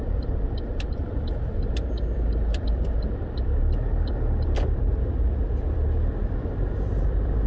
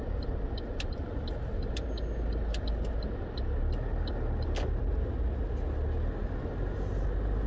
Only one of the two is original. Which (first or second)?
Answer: second